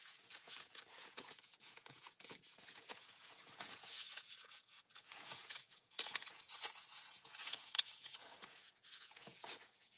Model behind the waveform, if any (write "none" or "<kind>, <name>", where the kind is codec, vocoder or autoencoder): vocoder, Vocos